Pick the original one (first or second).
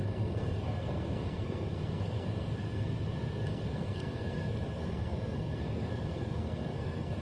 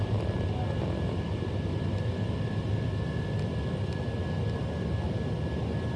second